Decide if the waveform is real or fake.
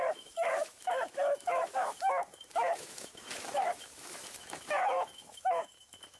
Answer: fake